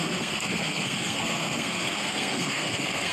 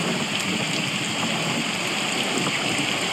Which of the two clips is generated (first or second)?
first